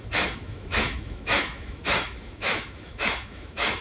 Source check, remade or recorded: remade